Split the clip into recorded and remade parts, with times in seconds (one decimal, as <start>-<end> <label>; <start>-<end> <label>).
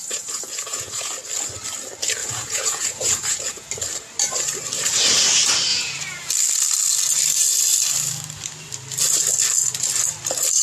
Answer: 0.0-1.1 remade; 1.1-2.2 recorded; 2.2-3.7 remade; 3.7-5.7 recorded; 5.7-6.3 remade; 6.3-10.6 recorded